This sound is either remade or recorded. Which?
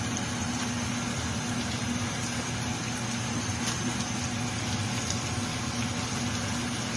recorded